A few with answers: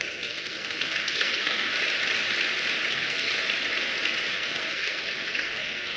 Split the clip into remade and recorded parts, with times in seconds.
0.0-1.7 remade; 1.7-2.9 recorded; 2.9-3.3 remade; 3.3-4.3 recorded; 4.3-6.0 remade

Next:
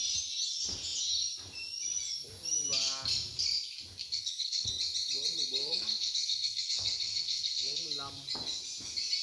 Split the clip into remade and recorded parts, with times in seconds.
0.0-4.0 recorded; 4.0-4.7 remade; 4.7-5.6 recorded; 5.6-7.8 remade; 7.8-9.2 recorded

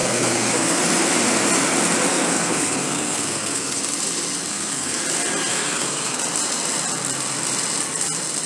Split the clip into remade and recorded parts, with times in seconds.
0.0-0.8 remade; 0.8-2.1 recorded; 2.1-3.8 remade; 3.8-4.5 recorded; 4.5-5.0 remade; 5.0-5.5 recorded; 5.5-6.2 remade; 6.2-8.5 recorded

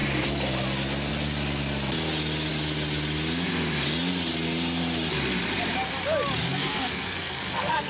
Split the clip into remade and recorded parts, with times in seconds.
0.0-6.4 recorded; 6.4-7.9 remade

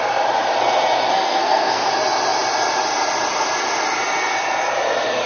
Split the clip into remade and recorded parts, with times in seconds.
0.0-1.1 recorded; 1.1-1.9 remade; 1.9-5.3 recorded

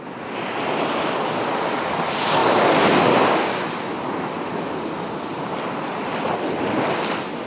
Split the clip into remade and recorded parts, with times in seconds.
0.0-7.5 recorded